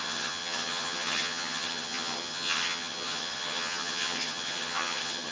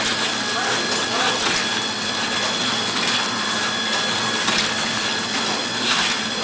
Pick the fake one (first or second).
first